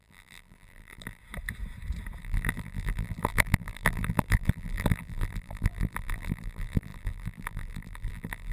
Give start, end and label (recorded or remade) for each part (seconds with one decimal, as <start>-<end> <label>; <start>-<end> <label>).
0.0-1.2 remade; 1.2-2.2 recorded; 2.2-8.5 remade